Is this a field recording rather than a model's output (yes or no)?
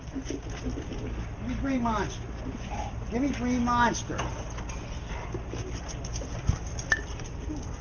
yes